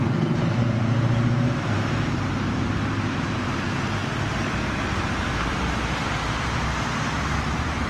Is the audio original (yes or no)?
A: no